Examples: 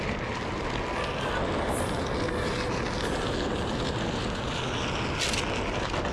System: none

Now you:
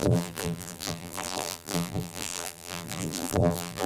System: vocoder, BigVGAN v2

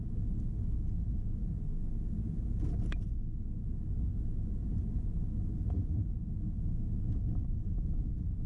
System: none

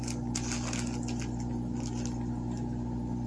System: none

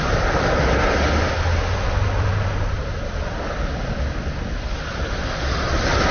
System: none